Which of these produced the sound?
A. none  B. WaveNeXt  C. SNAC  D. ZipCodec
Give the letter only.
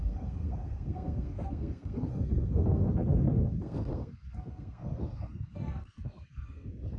C